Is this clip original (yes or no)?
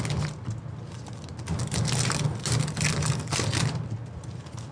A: yes